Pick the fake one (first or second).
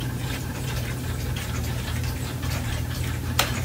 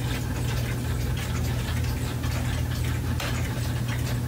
first